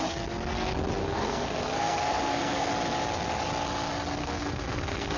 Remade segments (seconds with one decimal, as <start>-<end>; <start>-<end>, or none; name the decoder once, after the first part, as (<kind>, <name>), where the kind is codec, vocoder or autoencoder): 1.0-2.7 (codec, SNAC); 4.2-5.2